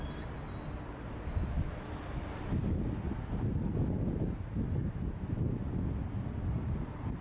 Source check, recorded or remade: recorded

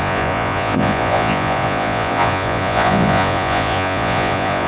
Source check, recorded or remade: remade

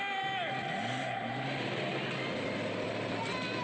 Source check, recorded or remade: recorded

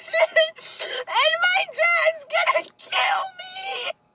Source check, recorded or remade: recorded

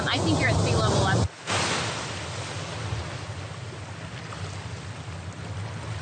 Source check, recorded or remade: recorded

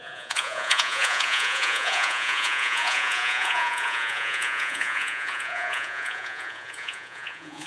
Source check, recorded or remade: remade